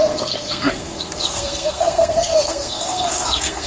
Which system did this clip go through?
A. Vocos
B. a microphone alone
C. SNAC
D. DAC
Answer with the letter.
C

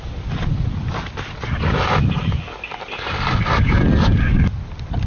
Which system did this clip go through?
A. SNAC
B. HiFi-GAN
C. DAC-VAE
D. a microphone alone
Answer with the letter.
D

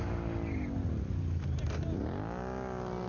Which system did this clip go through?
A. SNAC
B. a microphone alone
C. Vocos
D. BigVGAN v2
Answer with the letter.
B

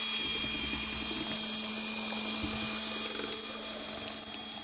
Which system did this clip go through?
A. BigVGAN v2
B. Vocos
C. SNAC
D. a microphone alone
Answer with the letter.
D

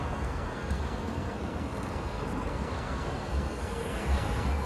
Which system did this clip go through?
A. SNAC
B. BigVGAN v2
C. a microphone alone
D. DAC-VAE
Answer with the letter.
A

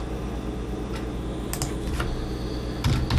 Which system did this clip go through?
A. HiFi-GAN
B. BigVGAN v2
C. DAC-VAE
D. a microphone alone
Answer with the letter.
D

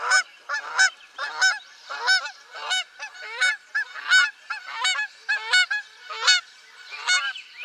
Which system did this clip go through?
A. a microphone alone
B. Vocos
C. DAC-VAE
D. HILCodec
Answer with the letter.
A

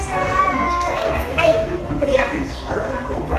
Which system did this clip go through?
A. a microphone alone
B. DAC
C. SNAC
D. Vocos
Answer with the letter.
C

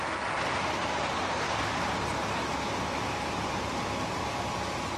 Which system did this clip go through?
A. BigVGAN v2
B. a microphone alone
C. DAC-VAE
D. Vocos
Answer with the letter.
B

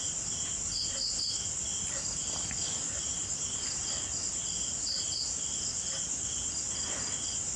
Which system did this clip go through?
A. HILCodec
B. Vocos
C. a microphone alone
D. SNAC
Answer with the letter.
C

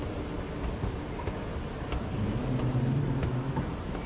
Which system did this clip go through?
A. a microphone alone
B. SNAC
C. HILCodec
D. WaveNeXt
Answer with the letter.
A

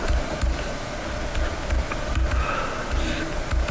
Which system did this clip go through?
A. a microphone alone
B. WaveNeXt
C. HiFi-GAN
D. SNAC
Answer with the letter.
A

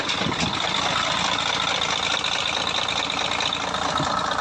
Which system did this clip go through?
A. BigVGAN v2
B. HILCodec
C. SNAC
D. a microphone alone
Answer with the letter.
D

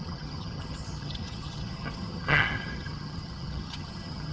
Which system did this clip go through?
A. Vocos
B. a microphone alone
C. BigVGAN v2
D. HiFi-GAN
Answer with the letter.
D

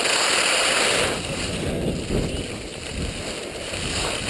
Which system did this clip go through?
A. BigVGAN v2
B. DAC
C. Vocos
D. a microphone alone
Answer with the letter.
D